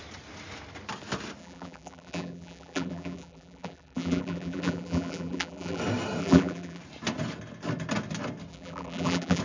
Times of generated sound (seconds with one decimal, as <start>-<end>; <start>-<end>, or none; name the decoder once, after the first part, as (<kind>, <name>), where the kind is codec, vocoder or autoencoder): 1.4-5.8 (vocoder, BigVGAN v2); 6.2-6.8; 8.5-9.4